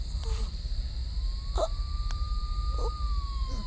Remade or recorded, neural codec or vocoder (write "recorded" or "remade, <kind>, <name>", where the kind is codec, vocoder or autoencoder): remade, vocoder, BigVGAN v2